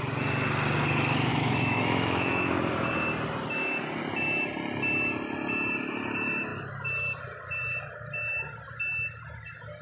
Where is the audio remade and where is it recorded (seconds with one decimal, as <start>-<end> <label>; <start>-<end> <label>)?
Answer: 0.0-1.3 recorded; 1.3-2.3 remade; 2.3-9.8 recorded